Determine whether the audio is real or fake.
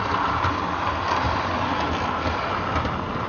real